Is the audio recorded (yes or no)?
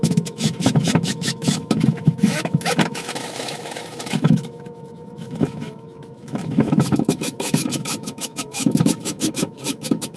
no